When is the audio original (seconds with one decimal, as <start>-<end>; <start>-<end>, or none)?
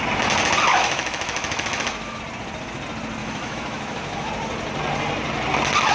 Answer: 0.0-0.7; 2.2-3.2; 4.3-5.9